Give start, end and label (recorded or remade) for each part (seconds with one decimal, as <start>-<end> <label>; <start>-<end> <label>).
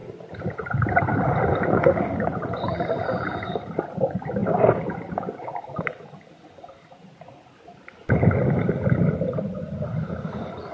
0.0-10.7 recorded